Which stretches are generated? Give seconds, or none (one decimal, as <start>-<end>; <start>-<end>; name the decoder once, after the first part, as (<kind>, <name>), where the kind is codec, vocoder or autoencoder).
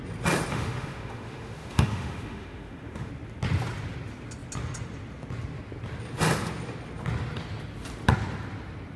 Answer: 0.5-3.1 (autoencoder, DAC-VAE)